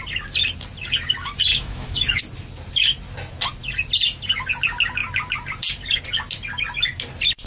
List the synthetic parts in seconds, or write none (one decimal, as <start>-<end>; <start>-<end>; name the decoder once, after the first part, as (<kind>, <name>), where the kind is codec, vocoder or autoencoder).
1.5-2.2 (autoencoder, DAC-VAE)